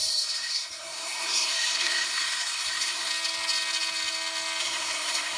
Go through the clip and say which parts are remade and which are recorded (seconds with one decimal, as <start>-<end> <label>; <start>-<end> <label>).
0.0-3.1 remade; 3.1-4.6 recorded; 4.6-5.4 remade